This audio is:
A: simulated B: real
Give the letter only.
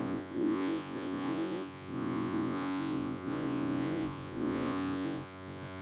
A